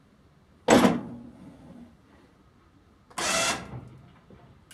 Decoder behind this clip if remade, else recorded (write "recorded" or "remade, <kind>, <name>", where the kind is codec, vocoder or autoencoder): recorded